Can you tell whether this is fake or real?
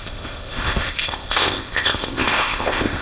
fake